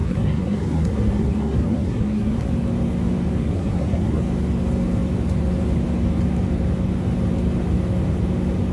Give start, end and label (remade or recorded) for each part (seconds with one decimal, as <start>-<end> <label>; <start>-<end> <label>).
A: 0.0-2.5 remade; 2.5-3.4 recorded; 3.4-4.2 remade; 4.2-8.7 recorded